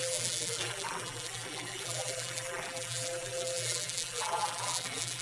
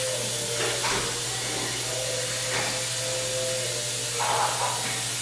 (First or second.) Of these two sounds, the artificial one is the first